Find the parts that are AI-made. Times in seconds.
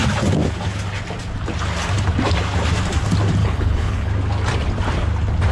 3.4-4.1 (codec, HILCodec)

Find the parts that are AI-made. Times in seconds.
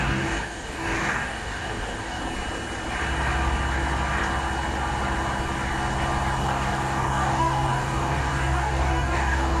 0.0-2.2 (codec, DAC); 6.4-9.6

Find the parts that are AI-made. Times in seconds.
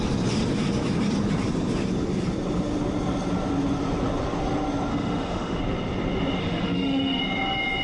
4.9-5.6 (autoencoder, DAC-VAE); 6.4-7.2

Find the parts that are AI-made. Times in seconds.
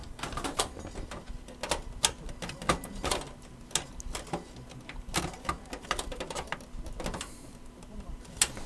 0.0-0.8 (vocoder, BigVGAN v2)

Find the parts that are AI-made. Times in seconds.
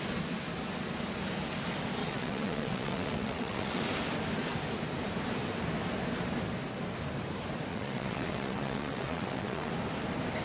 2.0-3.8 (vocoder, WaveNeXt); 7.7-9.7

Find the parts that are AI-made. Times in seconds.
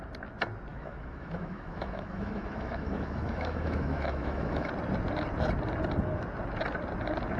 0.7-4.7 (autoencoder, DAC-VAE)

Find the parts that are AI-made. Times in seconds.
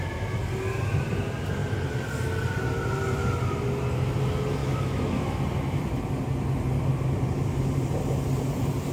4.6-5.4 (autoencoder, DAC-VAE)